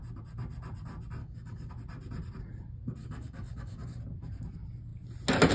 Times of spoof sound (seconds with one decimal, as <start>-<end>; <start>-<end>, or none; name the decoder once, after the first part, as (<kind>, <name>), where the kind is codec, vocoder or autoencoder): 1.2-1.7 (codec, DAC); 3.0-4.0